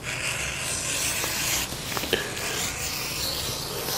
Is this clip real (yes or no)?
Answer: yes